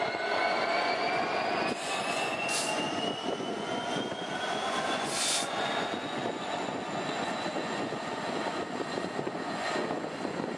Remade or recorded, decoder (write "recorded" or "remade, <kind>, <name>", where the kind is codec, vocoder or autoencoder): remade, vocoder, Vocos